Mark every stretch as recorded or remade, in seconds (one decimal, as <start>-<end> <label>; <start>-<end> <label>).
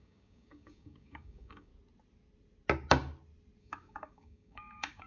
0.0-1.7 remade; 1.7-3.6 recorded; 3.6-5.1 remade